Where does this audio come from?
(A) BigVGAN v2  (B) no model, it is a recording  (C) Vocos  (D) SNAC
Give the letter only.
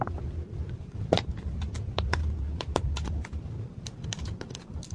B